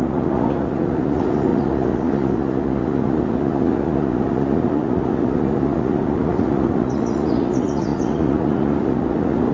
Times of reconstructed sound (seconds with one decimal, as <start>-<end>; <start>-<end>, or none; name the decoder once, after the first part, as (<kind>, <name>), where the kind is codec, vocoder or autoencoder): 0.0-9.5 (vocoder, Vocos)